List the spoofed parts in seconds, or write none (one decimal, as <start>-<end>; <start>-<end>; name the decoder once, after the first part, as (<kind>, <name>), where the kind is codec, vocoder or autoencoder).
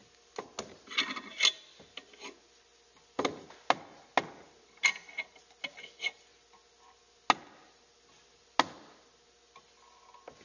none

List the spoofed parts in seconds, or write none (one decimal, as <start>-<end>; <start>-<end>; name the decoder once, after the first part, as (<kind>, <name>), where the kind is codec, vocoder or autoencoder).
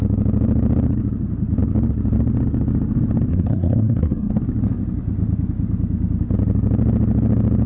3.3-4.3 (codec, SNAC)